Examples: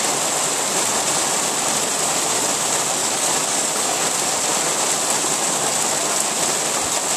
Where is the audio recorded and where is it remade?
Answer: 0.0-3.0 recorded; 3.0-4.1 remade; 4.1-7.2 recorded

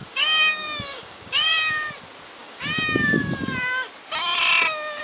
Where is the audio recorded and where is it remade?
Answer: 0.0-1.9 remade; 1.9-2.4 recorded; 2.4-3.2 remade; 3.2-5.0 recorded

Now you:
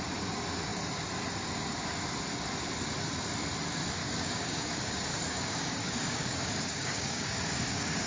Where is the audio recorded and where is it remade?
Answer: 0.0-4.0 recorded; 4.0-8.1 remade

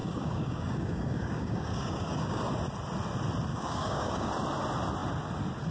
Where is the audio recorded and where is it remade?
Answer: 0.0-2.4 remade; 2.4-3.5 recorded; 3.5-4.3 remade; 4.3-5.7 recorded

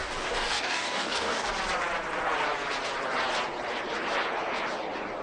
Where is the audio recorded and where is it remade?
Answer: 0.0-1.5 remade; 1.5-5.2 recorded

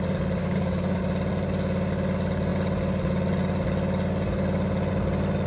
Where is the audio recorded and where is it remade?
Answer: 0.0-0.4 recorded; 0.4-1.0 remade; 1.0-5.5 recorded

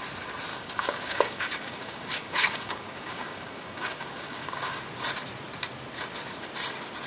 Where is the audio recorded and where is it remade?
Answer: 0.0-0.5 recorded; 0.5-4.8 remade; 4.8-7.1 recorded